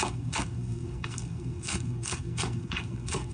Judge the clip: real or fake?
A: fake